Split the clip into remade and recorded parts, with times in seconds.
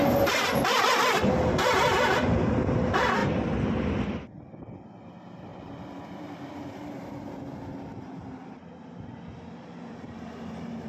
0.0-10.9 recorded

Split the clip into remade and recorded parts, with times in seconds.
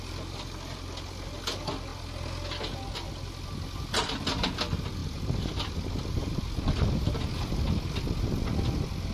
0.0-5.0 recorded; 5.0-6.4 remade; 6.4-9.1 recorded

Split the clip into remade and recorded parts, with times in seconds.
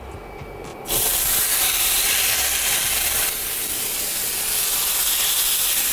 0.0-0.7 recorded; 0.7-2.3 remade; 2.3-5.9 recorded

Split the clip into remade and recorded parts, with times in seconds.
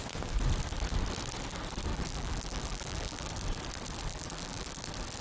0.0-1.9 recorded; 1.9-3.3 remade; 3.3-4.1 recorded; 4.1-4.7 remade; 4.7-5.2 recorded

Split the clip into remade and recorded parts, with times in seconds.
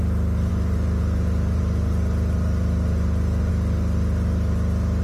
0.0-0.5 recorded; 0.5-3.5 remade; 3.5-5.0 recorded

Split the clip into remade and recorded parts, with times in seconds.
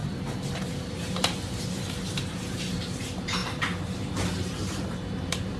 0.0-5.6 remade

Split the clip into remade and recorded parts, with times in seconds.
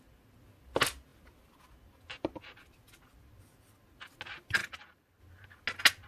0.0-4.6 recorded; 4.6-5.2 remade; 5.2-6.1 recorded